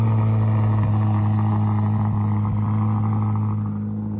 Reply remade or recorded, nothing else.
recorded